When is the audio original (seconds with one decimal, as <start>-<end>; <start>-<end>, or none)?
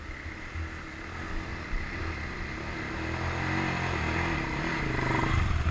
0.0-1.5; 2.0-5.7